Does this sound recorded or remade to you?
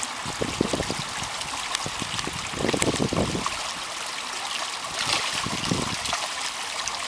recorded